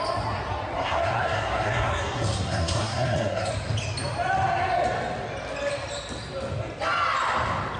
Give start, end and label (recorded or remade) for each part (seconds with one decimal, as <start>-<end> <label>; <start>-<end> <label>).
0.0-0.8 recorded; 0.8-3.5 remade; 3.5-7.8 recorded